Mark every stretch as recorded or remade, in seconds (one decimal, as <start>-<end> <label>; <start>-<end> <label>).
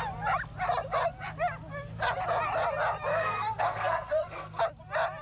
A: 0.0-3.1 recorded; 3.1-4.6 remade; 4.6-5.2 recorded